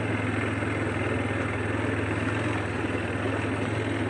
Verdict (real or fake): real